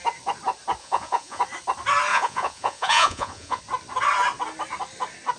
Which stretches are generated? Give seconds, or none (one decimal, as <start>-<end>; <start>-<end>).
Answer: 0.8-1.4; 2.1-3.6